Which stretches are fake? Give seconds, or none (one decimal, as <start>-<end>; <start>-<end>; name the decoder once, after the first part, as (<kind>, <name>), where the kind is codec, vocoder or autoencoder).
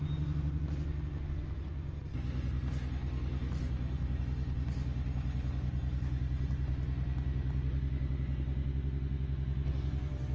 none